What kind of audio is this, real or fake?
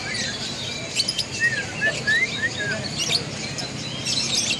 real